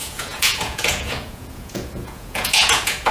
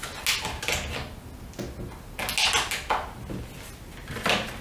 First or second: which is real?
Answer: second